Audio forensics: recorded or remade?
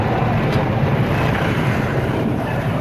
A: remade